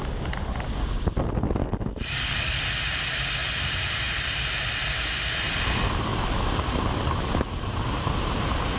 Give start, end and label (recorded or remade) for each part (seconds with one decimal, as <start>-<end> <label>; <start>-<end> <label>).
0.0-1.6 recorded; 1.6-2.6 remade; 2.6-8.8 recorded